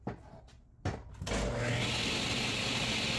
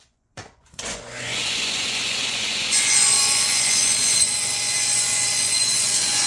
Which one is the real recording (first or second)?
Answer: first